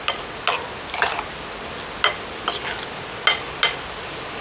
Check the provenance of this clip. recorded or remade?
recorded